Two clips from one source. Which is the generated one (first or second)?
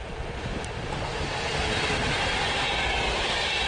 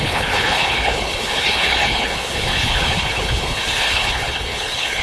second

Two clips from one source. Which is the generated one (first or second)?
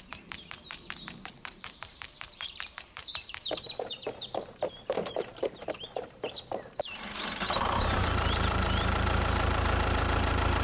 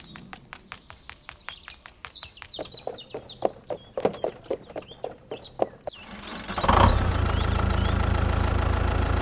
first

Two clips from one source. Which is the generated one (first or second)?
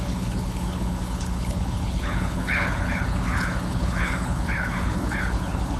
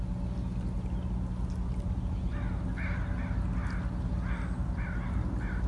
first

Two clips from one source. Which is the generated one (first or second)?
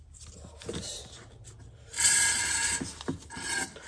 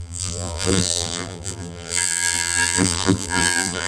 second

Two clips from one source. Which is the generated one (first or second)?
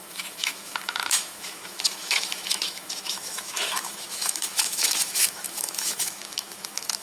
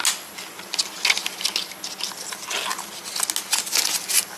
first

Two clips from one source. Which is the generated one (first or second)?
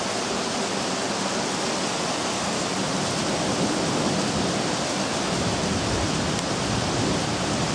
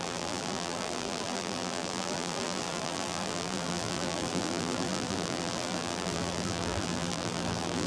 second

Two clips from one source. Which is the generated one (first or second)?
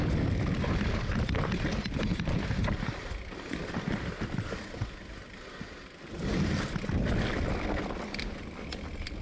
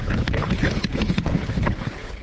second